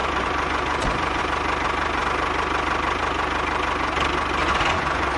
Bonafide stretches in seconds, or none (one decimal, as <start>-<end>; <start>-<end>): 1.2-4.4